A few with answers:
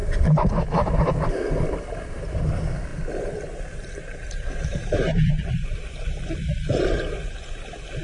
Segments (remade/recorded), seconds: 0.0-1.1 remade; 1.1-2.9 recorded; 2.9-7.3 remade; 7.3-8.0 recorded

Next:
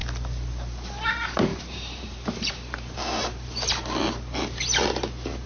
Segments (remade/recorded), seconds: 0.0-1.1 recorded; 1.1-5.5 remade

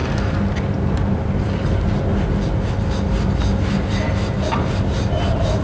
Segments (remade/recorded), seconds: 0.0-1.4 remade; 1.4-2.1 recorded; 2.1-5.6 remade